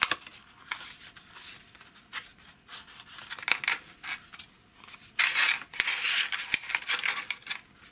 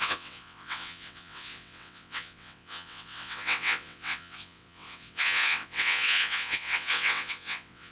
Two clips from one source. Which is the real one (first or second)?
first